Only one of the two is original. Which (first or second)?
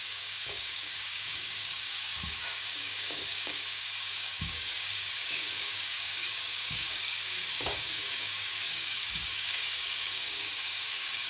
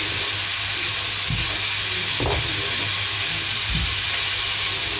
second